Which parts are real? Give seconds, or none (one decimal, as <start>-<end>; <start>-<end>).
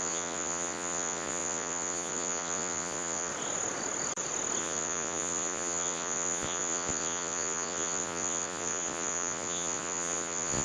3.3-4.6